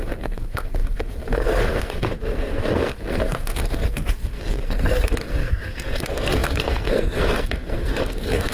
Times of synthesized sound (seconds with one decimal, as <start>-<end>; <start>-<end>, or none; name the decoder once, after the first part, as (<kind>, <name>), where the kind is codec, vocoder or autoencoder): 0.0-8.5 (codec, SNAC)